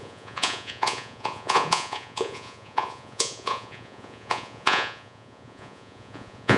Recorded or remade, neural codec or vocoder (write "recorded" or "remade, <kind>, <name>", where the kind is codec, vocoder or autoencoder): remade, vocoder, Vocos